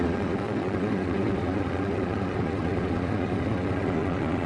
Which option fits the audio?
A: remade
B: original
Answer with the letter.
A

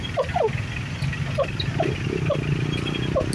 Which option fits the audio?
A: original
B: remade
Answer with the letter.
A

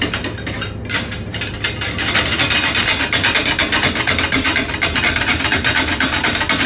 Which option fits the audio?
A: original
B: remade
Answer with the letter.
A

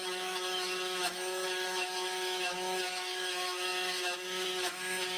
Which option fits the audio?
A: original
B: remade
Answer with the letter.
B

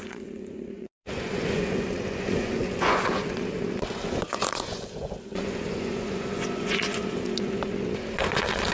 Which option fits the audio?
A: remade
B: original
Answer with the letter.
A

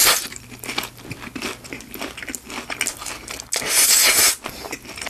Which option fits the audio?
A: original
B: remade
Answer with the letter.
A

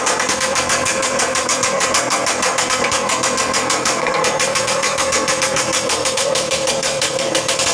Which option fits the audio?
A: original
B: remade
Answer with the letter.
B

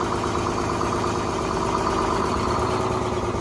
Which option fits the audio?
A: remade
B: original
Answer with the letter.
B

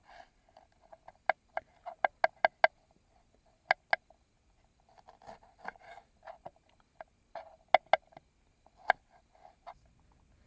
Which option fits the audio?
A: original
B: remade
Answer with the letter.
A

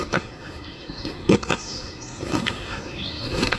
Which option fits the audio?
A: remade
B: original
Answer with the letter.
A